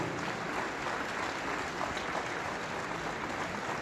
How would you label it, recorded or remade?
recorded